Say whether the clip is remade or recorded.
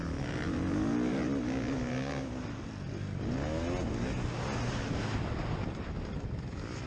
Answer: recorded